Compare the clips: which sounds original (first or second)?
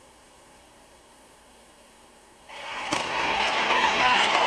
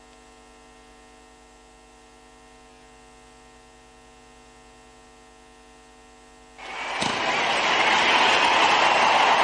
second